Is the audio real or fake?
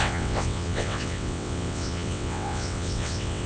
fake